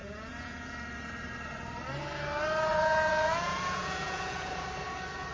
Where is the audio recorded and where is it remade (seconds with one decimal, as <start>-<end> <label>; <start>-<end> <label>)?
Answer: 0.0-0.7 remade; 0.7-2.7 recorded; 2.7-4.5 remade; 4.5-5.3 recorded